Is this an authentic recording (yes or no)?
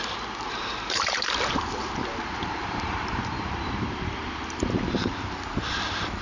no